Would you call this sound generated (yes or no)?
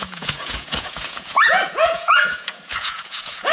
yes